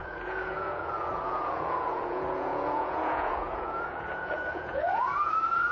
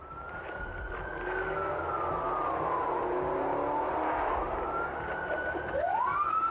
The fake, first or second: first